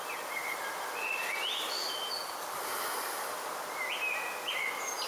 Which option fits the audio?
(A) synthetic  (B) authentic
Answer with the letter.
B